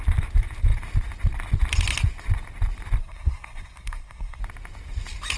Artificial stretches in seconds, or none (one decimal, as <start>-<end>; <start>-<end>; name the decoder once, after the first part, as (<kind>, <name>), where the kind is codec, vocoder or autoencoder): 3.0-4.4 (codec, SNAC)